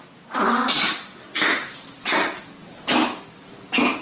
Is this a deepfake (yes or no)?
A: no